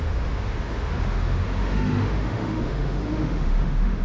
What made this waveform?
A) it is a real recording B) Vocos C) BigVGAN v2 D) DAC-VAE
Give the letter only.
D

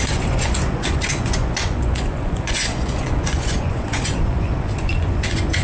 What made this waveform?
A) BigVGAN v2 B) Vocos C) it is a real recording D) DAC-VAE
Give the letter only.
B